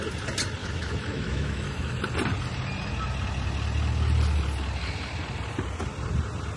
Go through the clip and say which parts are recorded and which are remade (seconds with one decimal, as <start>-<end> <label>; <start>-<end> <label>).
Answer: 0.0-0.6 recorded; 0.6-2.0 remade; 2.0-6.6 recorded

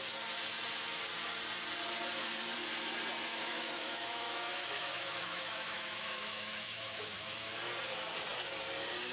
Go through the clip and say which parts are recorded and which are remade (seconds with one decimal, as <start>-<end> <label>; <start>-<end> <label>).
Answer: 0.0-3.3 recorded; 3.3-7.5 remade; 7.5-9.1 recorded

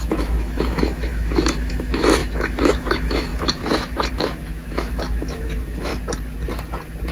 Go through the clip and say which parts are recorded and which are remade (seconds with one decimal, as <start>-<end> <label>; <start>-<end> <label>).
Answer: 0.0-5.9 remade; 5.9-7.1 recorded

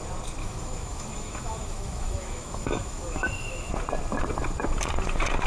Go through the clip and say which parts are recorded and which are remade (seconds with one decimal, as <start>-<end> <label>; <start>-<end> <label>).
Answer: 0.0-0.4 recorded; 0.4-3.7 remade; 3.7-5.5 recorded